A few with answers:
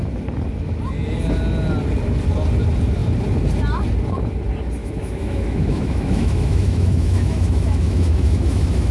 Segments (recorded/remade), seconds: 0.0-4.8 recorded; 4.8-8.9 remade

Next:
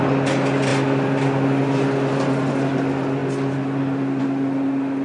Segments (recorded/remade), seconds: 0.0-5.0 recorded

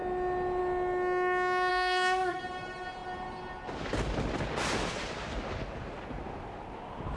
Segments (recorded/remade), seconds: 0.0-1.7 recorded; 1.7-2.4 remade; 2.4-7.2 recorded